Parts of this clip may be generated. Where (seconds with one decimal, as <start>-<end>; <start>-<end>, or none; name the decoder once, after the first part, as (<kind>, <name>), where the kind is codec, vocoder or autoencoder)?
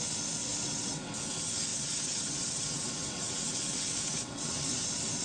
0.5-1.1 (vocoder, WaveNeXt); 1.7-4.8